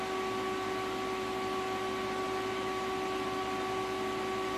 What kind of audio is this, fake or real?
real